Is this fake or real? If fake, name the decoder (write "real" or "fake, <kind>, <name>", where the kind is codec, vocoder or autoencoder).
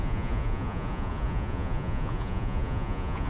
fake, vocoder, Vocos